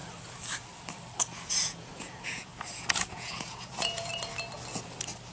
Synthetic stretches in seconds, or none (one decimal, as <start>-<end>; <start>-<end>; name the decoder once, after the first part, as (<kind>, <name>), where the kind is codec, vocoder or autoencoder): 1.5-2.5 (vocoder, Vocos); 3.1-4.1